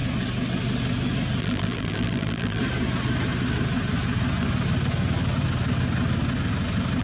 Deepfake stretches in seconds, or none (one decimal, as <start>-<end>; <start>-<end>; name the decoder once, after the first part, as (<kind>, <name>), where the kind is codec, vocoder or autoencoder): 1.4-2.6 (vocoder, BigVGAN v2)